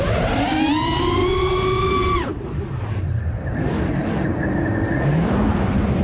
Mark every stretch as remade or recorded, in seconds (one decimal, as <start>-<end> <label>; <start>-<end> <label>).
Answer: 0.0-1.2 remade; 1.2-1.9 recorded; 1.9-6.0 remade